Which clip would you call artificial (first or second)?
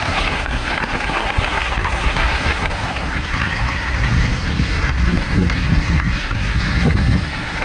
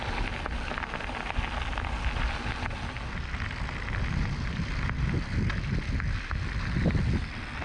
first